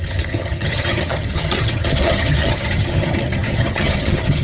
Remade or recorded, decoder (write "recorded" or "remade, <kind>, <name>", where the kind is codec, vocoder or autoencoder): remade, vocoder, HiFi-GAN